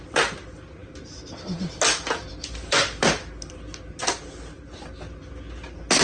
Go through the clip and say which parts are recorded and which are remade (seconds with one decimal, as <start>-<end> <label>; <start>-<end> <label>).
0.0-6.0 recorded